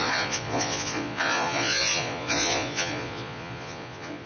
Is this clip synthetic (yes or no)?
yes